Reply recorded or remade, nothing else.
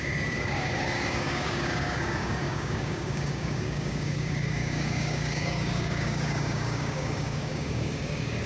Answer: remade